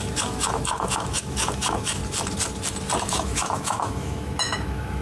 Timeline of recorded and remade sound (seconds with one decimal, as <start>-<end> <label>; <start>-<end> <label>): 0.0-2.0 remade; 2.0-3.0 recorded; 3.0-5.0 remade